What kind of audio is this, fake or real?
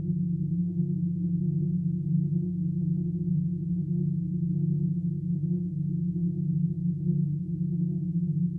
fake